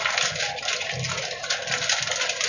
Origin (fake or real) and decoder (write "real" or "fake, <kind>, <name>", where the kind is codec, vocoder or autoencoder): real